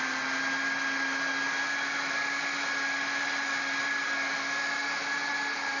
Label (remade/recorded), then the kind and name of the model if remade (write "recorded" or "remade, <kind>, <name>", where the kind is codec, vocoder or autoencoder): recorded